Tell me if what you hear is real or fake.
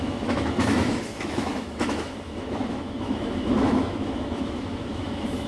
fake